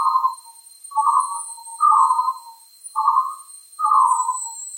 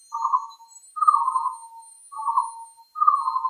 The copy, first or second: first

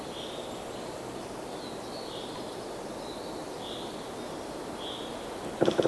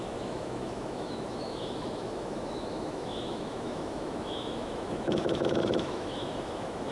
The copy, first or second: second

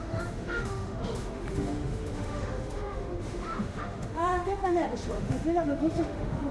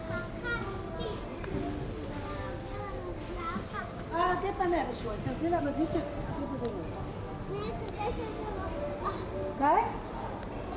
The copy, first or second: first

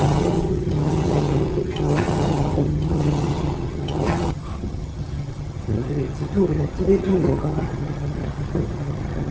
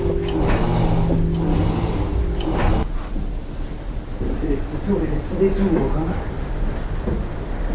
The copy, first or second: first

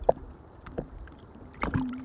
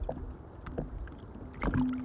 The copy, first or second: first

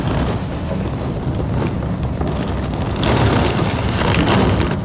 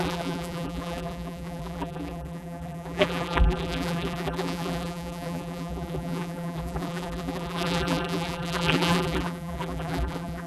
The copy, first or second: second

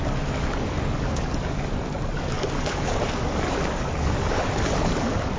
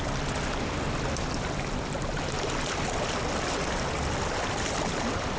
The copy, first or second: first